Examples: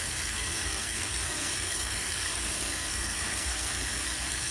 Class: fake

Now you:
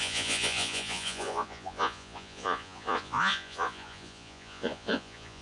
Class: fake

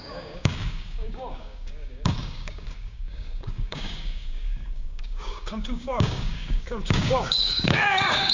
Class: fake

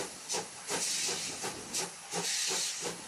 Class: real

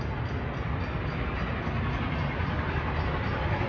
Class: real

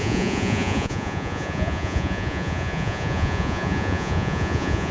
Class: fake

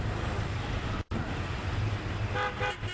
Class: real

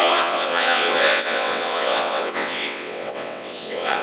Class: fake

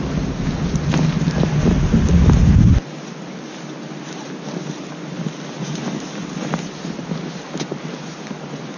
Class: real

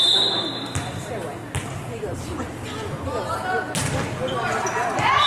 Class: real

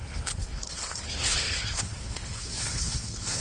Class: fake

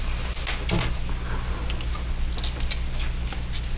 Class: real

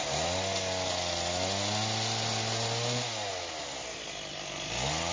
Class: real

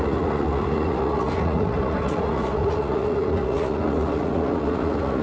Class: fake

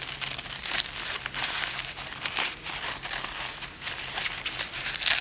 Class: real